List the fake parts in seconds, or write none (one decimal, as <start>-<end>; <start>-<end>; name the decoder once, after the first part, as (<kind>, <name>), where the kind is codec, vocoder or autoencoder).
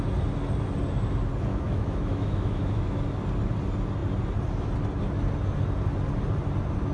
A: 1.5-3.0 (autoencoder, DAC-VAE)